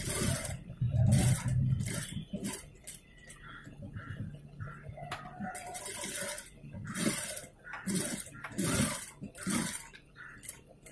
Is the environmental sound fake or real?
real